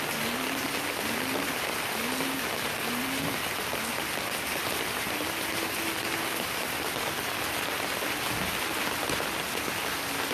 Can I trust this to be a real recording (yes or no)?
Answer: yes